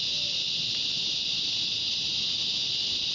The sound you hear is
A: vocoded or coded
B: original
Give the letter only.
B